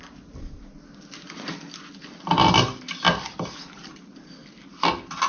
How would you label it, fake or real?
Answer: real